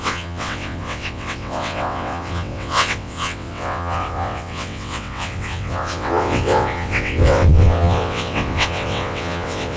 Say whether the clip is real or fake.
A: fake